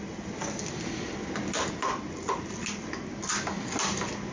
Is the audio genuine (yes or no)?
yes